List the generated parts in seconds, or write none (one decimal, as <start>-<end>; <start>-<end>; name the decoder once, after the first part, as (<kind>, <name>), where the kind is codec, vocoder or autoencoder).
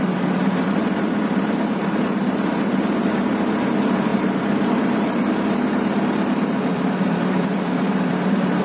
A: 4.1-5.3 (vocoder, BigVGAN v2); 6.7-8.1